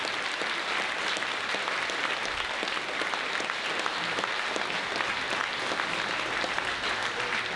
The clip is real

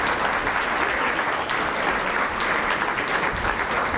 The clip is real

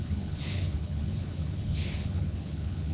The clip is fake